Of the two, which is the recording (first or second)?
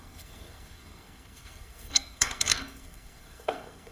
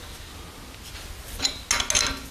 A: second